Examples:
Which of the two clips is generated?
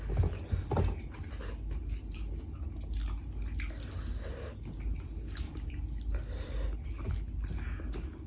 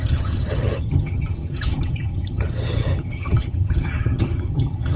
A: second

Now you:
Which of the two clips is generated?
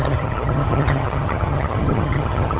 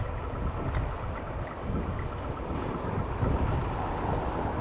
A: first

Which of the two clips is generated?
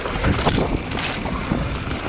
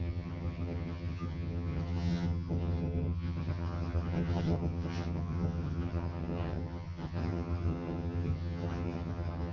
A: second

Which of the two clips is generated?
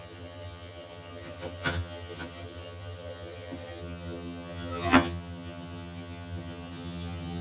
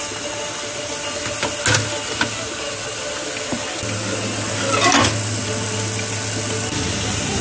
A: first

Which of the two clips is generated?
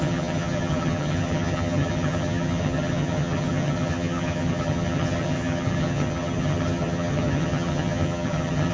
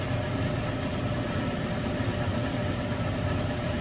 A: first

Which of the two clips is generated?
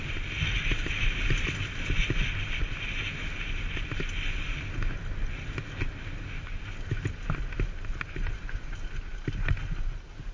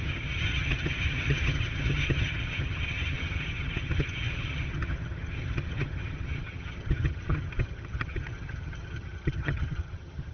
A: second